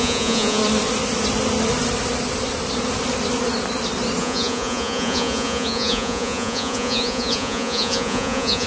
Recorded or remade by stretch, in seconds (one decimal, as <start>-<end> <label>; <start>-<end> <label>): 0.0-0.6 remade; 0.6-4.2 recorded; 4.2-8.7 remade